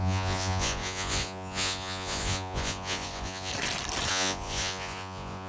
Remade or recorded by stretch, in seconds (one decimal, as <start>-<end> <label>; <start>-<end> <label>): 0.0-3.5 remade; 3.5-4.1 recorded; 4.1-5.5 remade